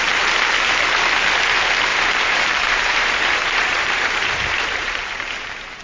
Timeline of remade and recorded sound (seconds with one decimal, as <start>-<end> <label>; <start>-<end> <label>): 0.0-1.9 recorded; 1.9-5.8 remade